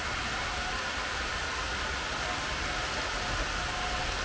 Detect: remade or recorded recorded